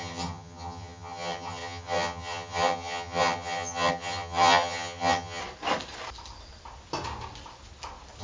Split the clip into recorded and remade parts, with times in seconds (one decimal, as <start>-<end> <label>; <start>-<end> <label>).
0.0-5.4 remade; 5.4-8.2 recorded

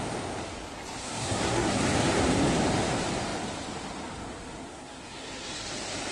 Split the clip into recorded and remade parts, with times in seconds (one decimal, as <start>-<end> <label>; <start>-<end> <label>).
0.0-1.0 recorded; 1.0-1.8 remade; 1.8-4.7 recorded; 4.7-5.6 remade; 5.6-6.1 recorded

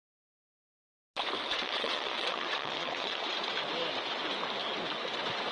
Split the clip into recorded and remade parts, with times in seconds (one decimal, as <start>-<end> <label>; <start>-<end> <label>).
0.0-1.5 recorded; 1.5-3.2 remade; 3.2-5.5 recorded

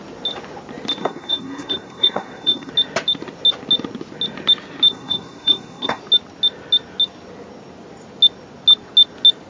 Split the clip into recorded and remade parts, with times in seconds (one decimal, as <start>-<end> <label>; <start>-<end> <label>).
0.0-1.0 recorded; 1.0-2.7 remade; 2.7-4.9 recorded; 4.9-6.0 remade; 6.0-9.5 recorded

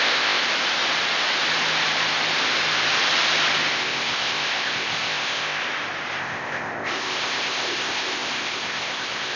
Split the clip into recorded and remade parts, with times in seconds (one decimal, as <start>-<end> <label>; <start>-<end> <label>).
0.0-0.4 remade; 0.4-3.7 recorded; 3.7-5.6 remade; 5.6-6.2 recorded; 6.2-9.4 remade

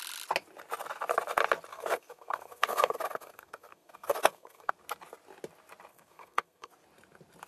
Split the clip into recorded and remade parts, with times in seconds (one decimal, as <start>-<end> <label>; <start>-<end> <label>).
0.0-1.7 recorded; 1.7-4.7 remade; 4.7-5.9 recorded; 5.9-6.7 remade; 6.7-7.5 recorded

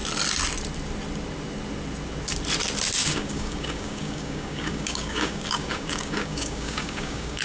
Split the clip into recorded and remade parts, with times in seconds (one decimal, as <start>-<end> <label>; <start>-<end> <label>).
0.0-3.0 recorded; 3.0-7.4 remade